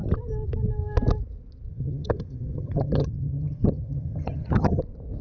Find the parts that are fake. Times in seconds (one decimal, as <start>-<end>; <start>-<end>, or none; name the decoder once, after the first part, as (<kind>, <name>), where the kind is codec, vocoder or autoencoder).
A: 1.7-4.8 (vocoder, HiFi-GAN)